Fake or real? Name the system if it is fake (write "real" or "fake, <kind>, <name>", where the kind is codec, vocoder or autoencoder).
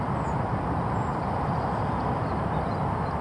real